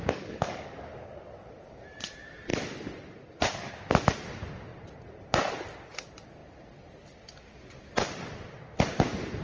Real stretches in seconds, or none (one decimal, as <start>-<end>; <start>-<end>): 1.5-9.4